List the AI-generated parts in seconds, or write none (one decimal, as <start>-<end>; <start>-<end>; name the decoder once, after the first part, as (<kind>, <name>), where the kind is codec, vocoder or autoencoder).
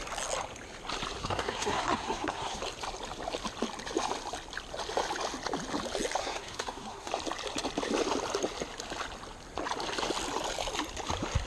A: 1.2-2.6 (codec, SNAC); 6.2-7.1